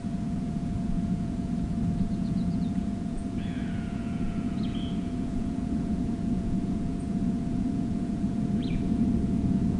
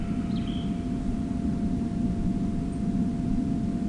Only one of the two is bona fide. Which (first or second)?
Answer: second